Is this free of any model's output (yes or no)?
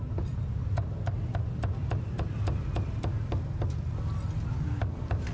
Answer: yes